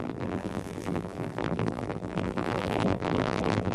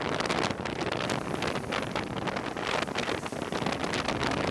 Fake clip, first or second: first